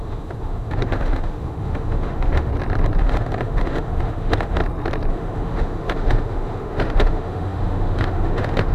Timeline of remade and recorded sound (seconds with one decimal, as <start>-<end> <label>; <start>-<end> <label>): 0.0-2.5 remade; 2.5-3.0 recorded; 3.0-4.6 remade; 4.6-5.1 recorded; 5.1-8.7 remade